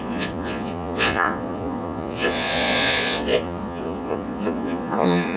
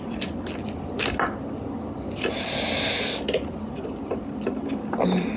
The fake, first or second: first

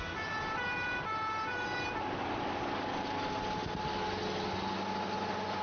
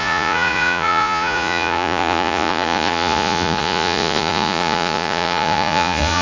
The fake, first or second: second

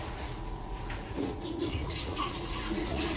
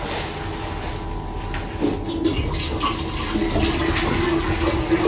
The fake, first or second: first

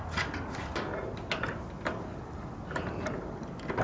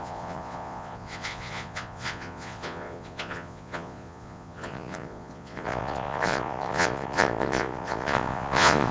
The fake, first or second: second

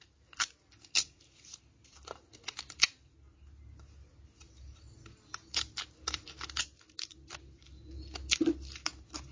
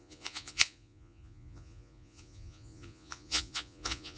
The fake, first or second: second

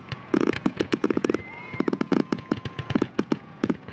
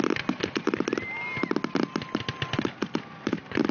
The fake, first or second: first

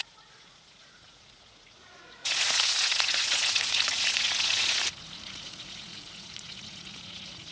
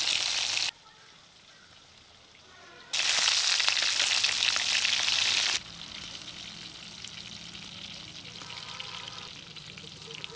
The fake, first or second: first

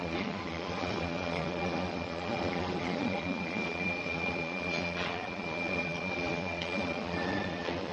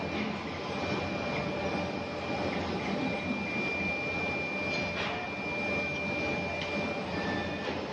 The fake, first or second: first